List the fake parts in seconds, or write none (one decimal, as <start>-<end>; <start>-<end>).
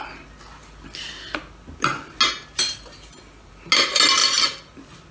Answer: none